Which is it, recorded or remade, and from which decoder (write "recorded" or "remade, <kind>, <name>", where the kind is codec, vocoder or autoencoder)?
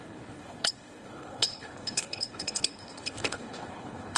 remade, codec, HILCodec